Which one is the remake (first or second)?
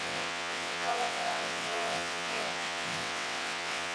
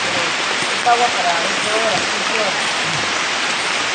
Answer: first